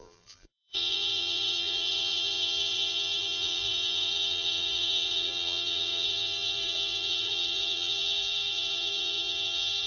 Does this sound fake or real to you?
fake